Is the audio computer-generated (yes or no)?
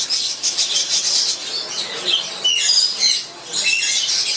no